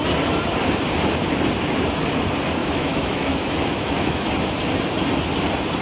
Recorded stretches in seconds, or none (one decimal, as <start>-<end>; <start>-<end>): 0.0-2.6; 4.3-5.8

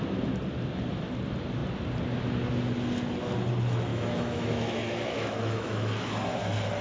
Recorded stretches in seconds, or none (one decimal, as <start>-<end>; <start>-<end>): 0.0-3.9; 6.1-6.8

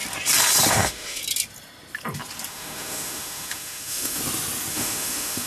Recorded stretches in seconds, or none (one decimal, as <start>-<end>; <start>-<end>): 0.0-0.7; 1.2-2.5; 4.2-4.7

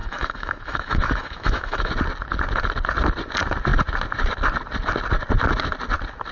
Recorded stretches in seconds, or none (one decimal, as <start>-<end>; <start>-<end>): 1.9-6.3

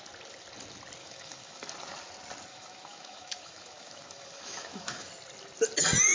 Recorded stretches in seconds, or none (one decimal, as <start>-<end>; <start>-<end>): 0.0-1.0; 1.6-2.5; 5.1-6.1